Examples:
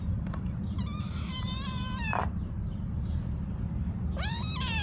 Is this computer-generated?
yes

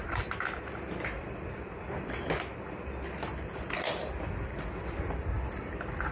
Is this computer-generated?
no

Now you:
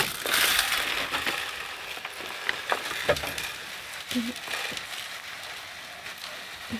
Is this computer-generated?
no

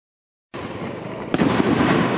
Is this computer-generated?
yes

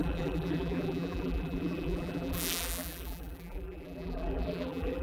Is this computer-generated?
yes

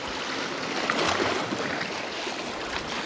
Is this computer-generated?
no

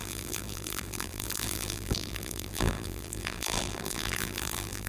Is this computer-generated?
yes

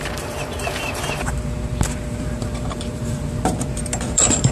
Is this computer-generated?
yes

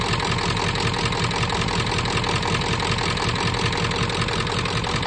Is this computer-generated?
no